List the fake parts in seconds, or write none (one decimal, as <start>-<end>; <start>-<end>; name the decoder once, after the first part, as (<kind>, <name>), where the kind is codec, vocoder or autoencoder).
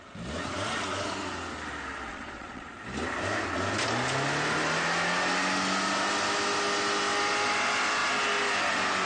2.1-2.7 (vocoder, Vocos)